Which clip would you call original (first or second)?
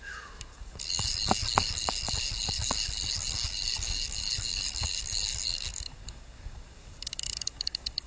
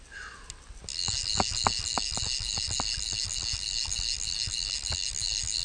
second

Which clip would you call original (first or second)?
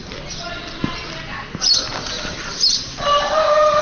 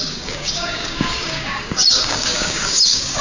first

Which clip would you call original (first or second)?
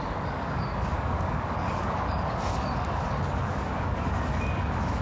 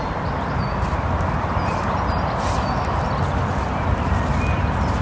second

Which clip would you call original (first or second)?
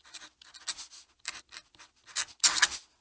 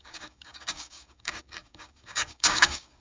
first